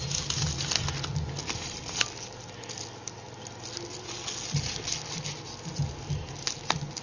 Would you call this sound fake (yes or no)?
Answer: no